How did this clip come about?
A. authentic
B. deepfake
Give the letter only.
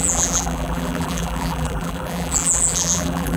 B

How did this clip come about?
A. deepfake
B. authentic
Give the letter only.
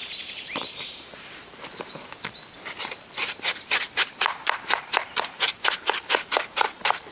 A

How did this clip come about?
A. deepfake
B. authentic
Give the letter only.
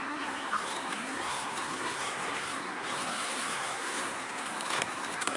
A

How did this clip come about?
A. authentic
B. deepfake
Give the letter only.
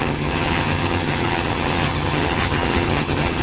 B